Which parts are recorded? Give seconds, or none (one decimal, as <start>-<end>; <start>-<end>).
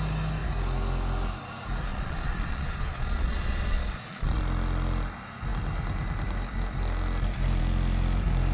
0.0-1.9; 4.4-8.5